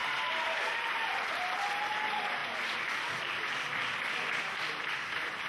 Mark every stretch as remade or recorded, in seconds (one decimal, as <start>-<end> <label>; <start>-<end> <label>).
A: 0.0-5.5 recorded